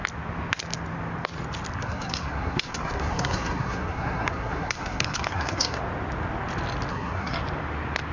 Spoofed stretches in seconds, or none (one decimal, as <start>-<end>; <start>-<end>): 1.8-5.8; 6.9-7.4